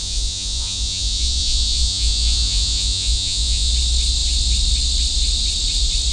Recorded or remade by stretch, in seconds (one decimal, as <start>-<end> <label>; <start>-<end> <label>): 0.0-3.7 remade; 3.7-6.1 recorded